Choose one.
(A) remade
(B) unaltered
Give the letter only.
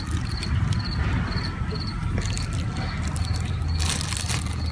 B